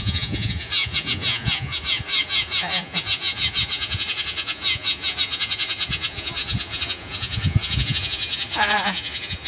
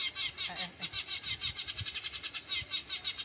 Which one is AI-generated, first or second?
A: first